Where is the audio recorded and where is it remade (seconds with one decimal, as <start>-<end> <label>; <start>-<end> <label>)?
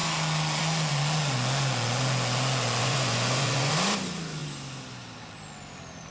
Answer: 0.0-2.8 recorded; 2.8-3.7 remade; 3.7-6.1 recorded